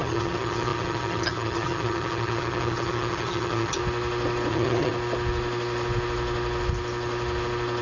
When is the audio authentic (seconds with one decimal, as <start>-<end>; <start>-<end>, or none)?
3.8-4.5; 4.9-7.8